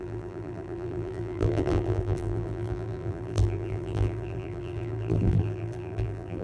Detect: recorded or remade remade